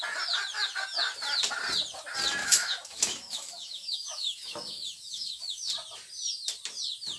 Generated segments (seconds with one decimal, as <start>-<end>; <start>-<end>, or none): 2.4-5.6